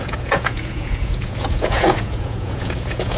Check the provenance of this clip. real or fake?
fake